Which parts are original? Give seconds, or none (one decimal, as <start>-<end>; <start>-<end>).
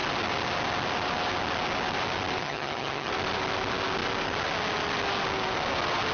0.0-2.4; 3.1-6.1